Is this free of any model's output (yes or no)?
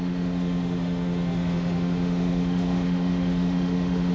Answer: no